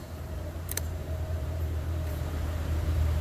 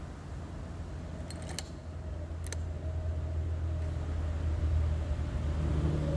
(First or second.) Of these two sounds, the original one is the second